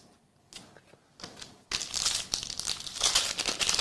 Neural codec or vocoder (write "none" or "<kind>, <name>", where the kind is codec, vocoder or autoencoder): none